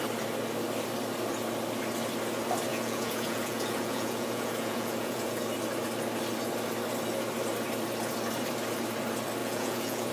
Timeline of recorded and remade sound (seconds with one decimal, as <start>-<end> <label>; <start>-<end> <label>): 0.0-2.7 recorded; 2.7-5.4 remade; 5.4-9.4 recorded; 9.4-10.1 remade